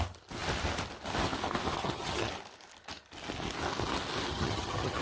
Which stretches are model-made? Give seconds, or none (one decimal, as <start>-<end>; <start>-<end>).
1.8-2.3; 4.3-5.0